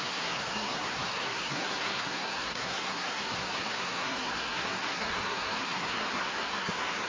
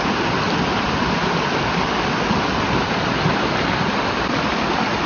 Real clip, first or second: second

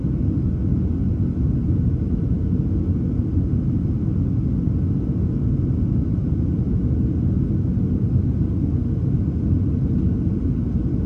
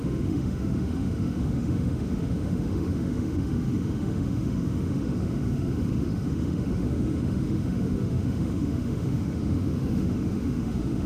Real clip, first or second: first